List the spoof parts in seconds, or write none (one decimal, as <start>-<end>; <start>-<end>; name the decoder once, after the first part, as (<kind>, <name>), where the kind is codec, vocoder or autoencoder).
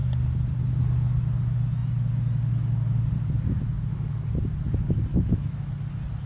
5.1-5.7 (autoencoder, DAC-VAE)